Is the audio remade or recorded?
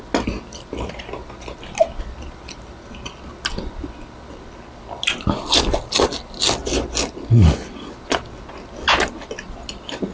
recorded